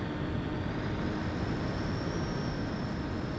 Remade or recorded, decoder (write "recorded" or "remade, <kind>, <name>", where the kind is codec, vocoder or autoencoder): recorded